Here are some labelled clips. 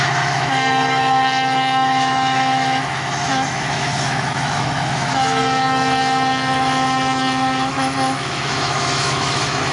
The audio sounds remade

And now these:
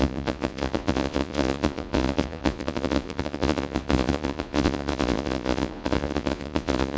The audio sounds remade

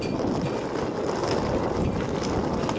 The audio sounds recorded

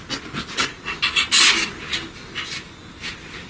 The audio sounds recorded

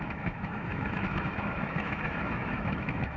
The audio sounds remade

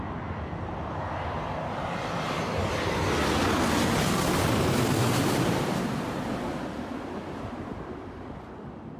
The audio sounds recorded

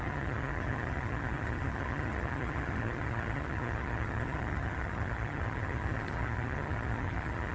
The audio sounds remade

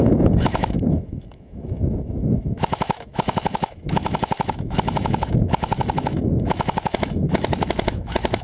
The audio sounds remade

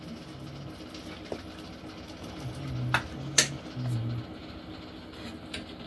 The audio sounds recorded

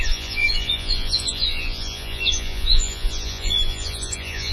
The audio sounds remade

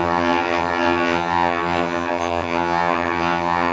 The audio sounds remade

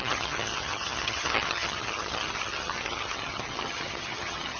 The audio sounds remade